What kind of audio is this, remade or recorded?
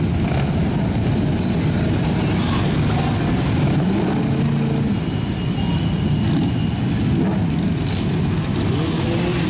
recorded